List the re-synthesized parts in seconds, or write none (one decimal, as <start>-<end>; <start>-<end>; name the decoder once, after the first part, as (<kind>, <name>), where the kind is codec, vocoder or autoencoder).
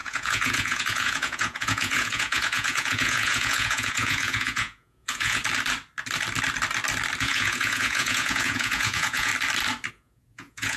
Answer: 0.0-5.4 (vocoder, Vocos); 7.2-9.3; 9.9-10.8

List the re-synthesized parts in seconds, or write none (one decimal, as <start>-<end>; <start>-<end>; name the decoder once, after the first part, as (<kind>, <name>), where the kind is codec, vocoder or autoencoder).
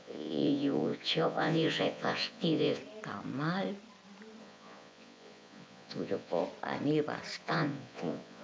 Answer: 0.0-2.8 (vocoder, Vocos); 4.4-6.4; 7.4-8.4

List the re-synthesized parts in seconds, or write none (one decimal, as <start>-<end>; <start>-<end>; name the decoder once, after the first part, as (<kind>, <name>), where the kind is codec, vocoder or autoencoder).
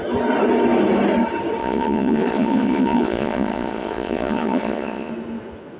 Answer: 1.6-5.1 (vocoder, Vocos)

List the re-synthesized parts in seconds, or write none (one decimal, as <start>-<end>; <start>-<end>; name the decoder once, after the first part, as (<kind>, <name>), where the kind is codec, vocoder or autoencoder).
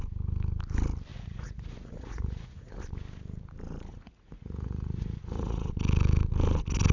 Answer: 1.1-2.8 (vocoder, Vocos); 3.9-5.7